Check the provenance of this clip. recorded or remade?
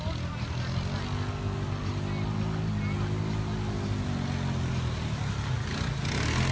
recorded